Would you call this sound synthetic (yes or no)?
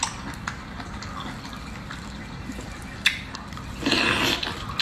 no